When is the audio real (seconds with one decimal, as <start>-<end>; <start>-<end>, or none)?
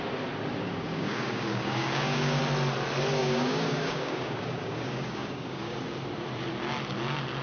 0.0-0.5; 2.4-3.2; 5.8-7.4